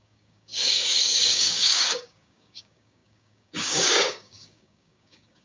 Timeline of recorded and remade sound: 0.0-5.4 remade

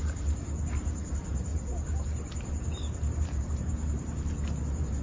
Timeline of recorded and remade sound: 0.0-5.0 remade

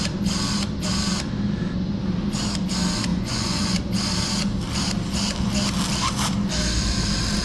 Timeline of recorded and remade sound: 0.0-3.1 recorded; 3.1-3.8 remade; 3.8-7.4 recorded

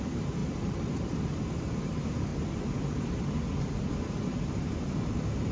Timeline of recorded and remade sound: 0.0-2.3 remade; 2.3-4.5 recorded; 4.5-5.5 remade